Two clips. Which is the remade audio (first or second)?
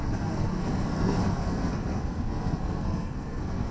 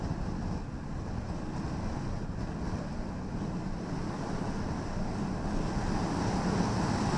first